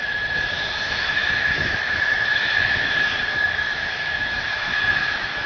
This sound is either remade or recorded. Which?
remade